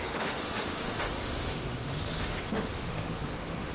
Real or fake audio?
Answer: fake